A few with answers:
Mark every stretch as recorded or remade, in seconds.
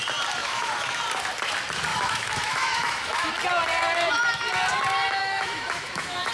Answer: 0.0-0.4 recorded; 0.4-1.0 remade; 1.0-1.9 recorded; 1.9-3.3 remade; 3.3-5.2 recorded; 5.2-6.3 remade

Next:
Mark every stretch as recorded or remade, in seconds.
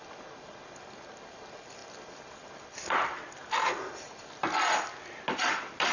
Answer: 0.0-5.9 recorded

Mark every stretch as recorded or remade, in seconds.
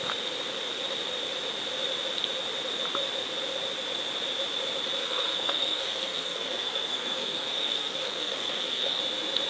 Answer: 0.0-5.0 recorded; 5.0-9.0 remade; 9.0-9.5 recorded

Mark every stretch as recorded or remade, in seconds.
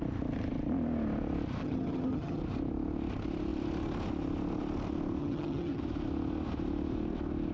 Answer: 0.0-1.6 recorded; 1.6-2.4 remade; 2.4-5.2 recorded; 5.2-5.8 remade; 5.8-7.5 recorded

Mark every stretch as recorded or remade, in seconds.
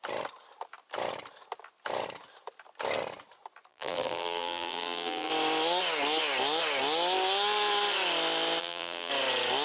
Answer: 0.0-3.7 recorded; 3.7-5.3 remade; 5.3-8.6 recorded; 8.6-9.1 remade; 9.1-9.6 recorded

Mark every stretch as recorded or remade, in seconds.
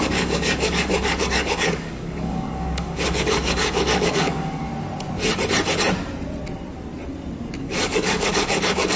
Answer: 0.0-4.7 remade; 4.7-7.6 recorded; 7.6-9.0 remade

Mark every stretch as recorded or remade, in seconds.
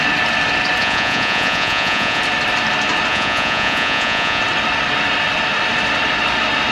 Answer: 0.0-0.8 recorded; 0.8-2.2 remade; 2.2-3.1 recorded; 3.1-4.4 remade; 4.4-6.7 recorded